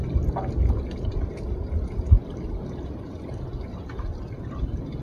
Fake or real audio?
real